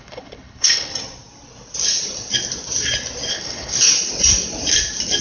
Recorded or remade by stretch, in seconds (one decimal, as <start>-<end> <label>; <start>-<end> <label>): 0.0-0.9 remade; 0.9-3.3 recorded; 3.3-3.9 remade; 3.9-5.2 recorded